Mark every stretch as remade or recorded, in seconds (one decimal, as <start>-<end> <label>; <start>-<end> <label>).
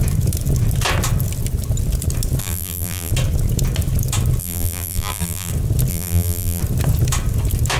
0.0-2.4 recorded; 2.4-3.1 remade; 3.1-4.4 recorded; 4.4-5.5 remade; 5.5-5.9 recorded; 5.9-6.6 remade; 6.6-7.8 recorded